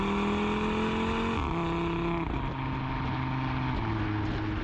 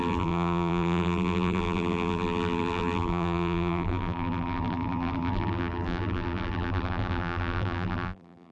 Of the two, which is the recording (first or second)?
first